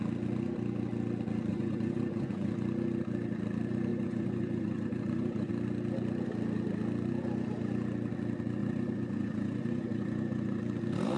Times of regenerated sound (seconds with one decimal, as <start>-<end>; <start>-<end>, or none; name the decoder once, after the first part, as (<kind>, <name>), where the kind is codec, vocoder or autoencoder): 1.5-2.5 (vocoder, Vocos); 3.9-5.5; 8.6-10.6